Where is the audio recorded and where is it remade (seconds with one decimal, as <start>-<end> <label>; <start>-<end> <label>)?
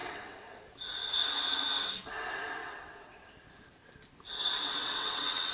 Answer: 0.0-0.6 remade; 0.6-2.6 recorded; 2.6-3.3 remade; 3.3-4.6 recorded; 4.6-5.5 remade